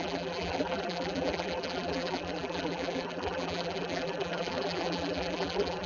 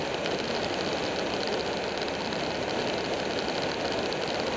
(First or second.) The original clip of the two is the second